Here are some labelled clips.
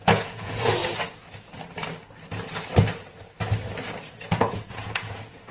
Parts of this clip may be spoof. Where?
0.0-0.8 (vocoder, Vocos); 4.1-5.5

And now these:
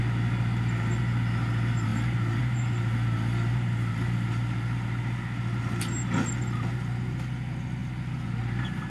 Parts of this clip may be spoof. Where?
none

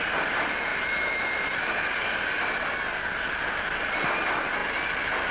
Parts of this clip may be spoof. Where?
0.7-1.4 (vocoder, BigVGAN v2)